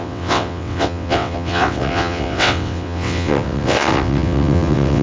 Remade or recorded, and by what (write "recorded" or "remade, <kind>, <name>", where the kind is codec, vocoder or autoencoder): remade, vocoder, WaveNeXt